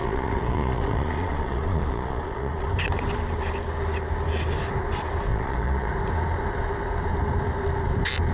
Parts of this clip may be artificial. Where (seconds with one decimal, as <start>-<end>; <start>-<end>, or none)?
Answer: 0.0-2.7; 5.3-5.9